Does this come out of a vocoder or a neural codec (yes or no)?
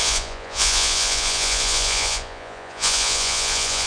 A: yes